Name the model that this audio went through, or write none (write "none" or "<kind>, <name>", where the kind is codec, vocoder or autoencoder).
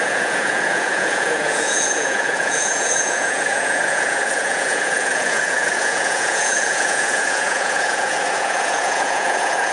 vocoder, Vocos